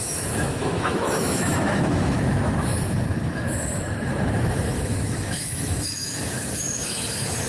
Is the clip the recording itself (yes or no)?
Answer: no